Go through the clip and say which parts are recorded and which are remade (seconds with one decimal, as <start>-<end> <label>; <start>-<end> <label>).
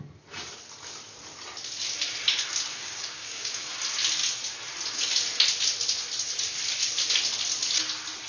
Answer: 0.0-2.7 recorded; 2.7-3.7 remade; 3.7-8.3 recorded